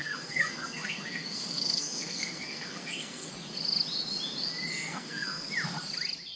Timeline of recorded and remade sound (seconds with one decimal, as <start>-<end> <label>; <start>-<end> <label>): 0.0-3.3 remade; 3.3-4.7 recorded; 4.7-5.5 remade; 5.5-6.4 recorded